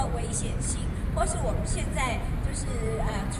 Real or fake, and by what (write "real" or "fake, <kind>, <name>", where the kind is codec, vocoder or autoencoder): real